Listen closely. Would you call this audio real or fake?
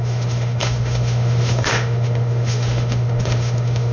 fake